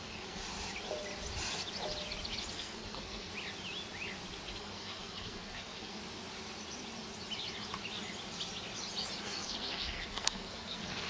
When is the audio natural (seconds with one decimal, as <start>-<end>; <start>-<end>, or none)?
0.4-2.5; 3.3-4.6; 6.0-9.2